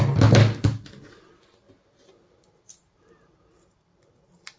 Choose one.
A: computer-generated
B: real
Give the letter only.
B